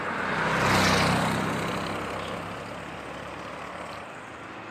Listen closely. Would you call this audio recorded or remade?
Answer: recorded